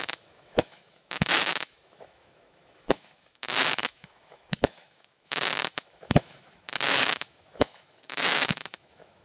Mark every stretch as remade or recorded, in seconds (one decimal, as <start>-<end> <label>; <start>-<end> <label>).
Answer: 0.0-9.2 remade